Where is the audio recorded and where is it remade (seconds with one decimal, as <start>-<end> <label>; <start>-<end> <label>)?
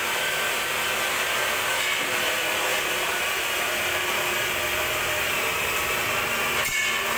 0.0-7.2 recorded